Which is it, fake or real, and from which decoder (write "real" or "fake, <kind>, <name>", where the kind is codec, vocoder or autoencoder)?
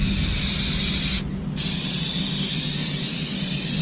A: real